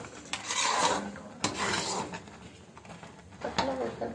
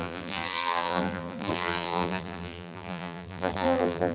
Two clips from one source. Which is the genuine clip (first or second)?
first